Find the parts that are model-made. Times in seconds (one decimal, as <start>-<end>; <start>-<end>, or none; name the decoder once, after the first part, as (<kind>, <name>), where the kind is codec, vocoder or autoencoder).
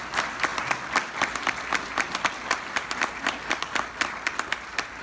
none